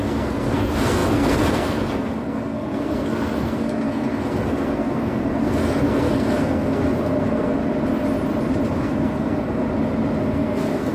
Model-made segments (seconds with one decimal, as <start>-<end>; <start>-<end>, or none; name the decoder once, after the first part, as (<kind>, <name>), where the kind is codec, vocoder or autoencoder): 0.0-7.6 (codec, SNAC); 8.8-9.6; 10.3-10.9